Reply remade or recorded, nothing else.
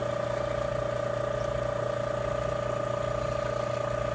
recorded